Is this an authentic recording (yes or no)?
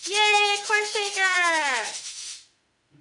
no